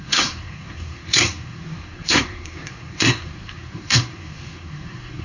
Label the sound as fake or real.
fake